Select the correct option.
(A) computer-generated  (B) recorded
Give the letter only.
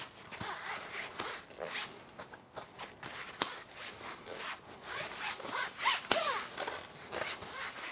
B